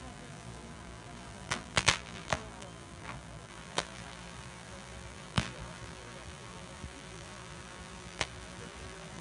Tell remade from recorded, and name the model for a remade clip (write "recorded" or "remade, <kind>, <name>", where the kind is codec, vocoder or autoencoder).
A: remade, vocoder, BigVGAN v2